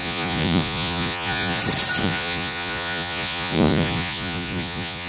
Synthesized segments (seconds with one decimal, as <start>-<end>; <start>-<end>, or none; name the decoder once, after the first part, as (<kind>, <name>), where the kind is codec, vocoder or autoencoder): 0.0-1.6 (vocoder, Vocos); 2.0-5.1